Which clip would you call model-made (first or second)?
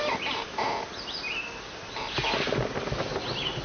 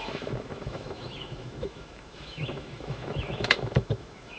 second